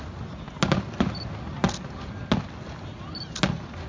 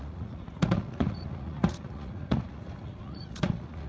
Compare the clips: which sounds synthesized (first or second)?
second